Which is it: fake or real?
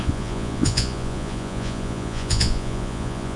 fake